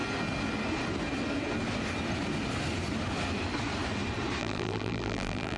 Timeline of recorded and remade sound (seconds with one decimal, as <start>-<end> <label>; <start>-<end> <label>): 0.0-4.4 recorded; 4.4-5.6 remade